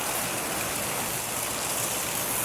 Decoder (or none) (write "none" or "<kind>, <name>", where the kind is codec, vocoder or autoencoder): none